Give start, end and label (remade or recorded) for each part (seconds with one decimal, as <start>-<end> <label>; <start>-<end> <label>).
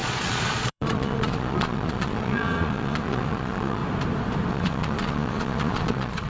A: 0.0-3.8 remade; 3.8-4.5 recorded; 4.5-6.3 remade